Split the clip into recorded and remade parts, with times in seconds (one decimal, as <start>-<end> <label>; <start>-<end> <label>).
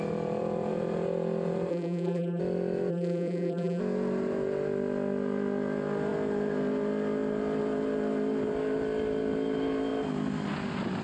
0.0-1.7 recorded; 1.7-2.4 remade; 2.4-2.9 recorded; 2.9-3.8 remade; 3.8-11.0 recorded